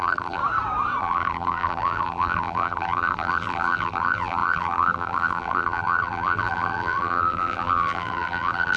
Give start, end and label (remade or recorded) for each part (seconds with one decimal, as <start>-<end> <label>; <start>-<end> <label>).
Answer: 0.0-0.4 remade; 0.4-1.0 recorded; 1.0-8.8 remade